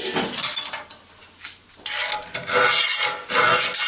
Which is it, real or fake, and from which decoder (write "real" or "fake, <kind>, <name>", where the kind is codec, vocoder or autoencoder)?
real